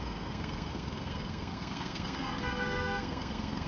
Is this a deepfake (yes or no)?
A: yes